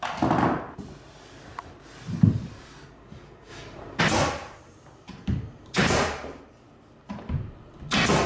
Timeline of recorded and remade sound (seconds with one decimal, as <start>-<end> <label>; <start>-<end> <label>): 0.0-3.5 recorded; 3.5-4.0 remade; 4.0-4.4 recorded; 4.4-6.4 remade; 6.4-8.3 recorded